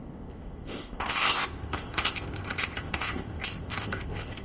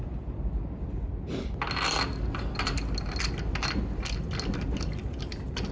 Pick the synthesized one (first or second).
first